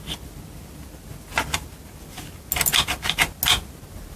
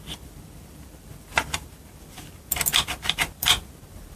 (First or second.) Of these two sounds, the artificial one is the second